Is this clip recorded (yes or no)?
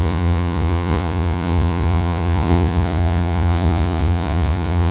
no